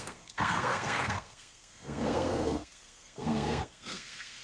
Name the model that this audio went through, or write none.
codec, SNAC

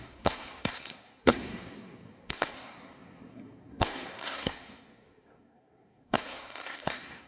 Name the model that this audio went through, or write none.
codec, SNAC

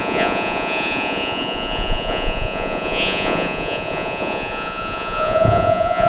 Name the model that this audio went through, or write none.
vocoder, Vocos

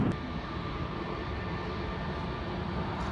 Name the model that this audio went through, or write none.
none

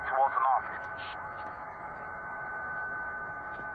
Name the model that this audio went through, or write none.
autoencoder, DAC-VAE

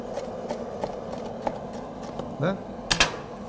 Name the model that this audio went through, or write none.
none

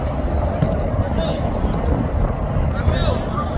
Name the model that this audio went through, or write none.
none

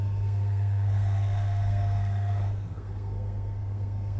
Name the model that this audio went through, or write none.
codec, SNAC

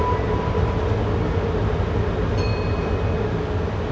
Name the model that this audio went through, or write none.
none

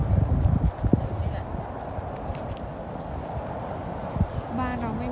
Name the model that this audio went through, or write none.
none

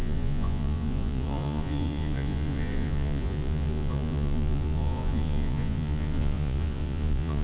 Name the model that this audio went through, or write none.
vocoder, Vocos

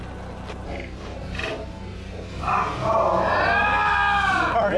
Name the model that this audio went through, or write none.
none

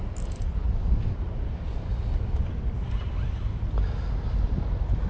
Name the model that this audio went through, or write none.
none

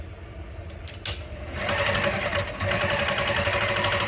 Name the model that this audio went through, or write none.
none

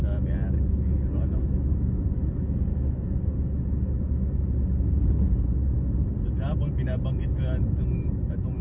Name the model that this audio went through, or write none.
none